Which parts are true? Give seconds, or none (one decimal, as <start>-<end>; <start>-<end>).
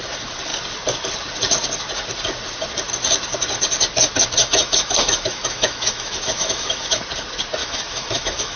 0.0-4.4; 7.0-7.6